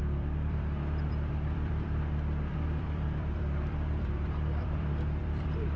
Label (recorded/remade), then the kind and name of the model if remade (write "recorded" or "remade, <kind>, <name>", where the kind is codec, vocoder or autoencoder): remade, vocoder, BigVGAN v2